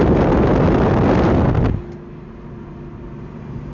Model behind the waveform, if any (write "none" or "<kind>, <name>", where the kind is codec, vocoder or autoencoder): none